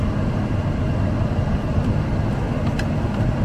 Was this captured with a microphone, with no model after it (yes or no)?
yes